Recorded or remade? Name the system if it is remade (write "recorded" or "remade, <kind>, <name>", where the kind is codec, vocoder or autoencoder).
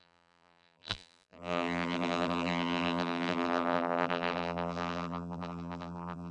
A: remade, vocoder, BigVGAN v2